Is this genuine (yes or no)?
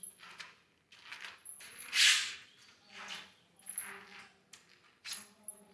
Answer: yes